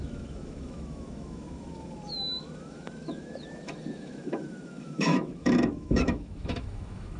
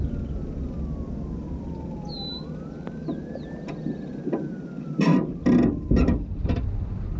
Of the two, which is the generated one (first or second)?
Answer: first